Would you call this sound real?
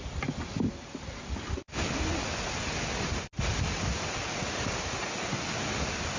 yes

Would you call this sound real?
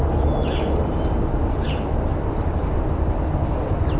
yes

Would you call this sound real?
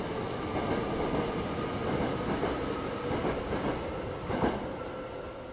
yes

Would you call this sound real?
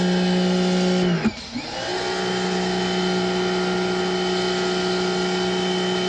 yes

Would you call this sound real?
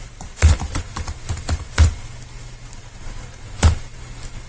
yes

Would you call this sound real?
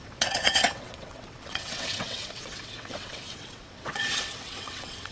no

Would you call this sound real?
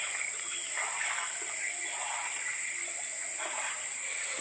yes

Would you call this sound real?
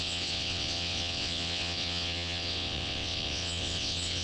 no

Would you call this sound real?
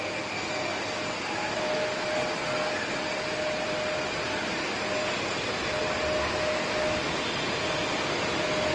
yes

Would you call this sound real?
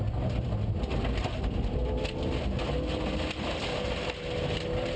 yes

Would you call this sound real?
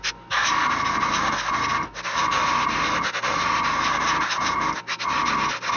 yes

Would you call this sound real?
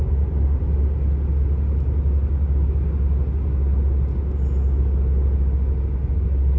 yes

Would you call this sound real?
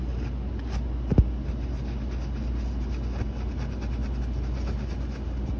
yes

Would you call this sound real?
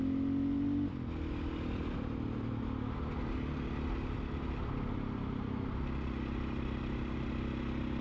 yes